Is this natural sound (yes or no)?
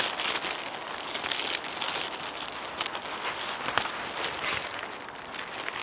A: yes